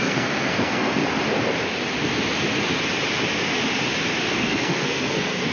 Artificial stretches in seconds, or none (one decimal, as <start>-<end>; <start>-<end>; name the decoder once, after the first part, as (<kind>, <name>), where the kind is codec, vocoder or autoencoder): 0.0-1.0 (codec, SNAC); 4.3-5.5